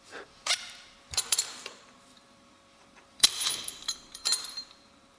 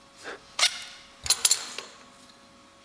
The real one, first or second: second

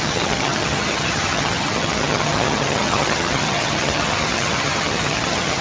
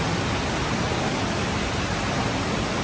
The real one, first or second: second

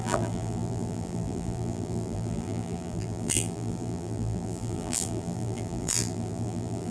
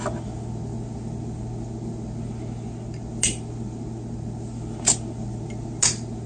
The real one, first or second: second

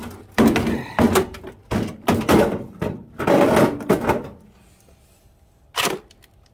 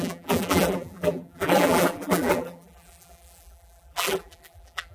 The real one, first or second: first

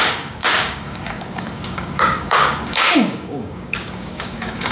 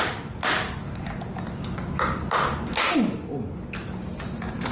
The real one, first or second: second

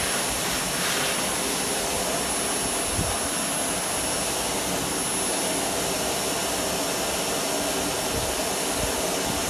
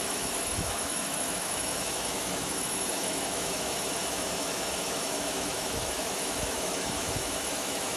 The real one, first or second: first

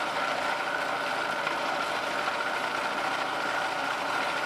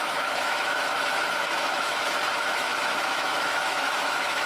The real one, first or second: first